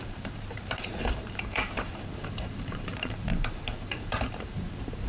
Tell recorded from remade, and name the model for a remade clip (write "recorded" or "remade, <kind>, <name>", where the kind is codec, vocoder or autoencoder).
remade, vocoder, BigVGAN v2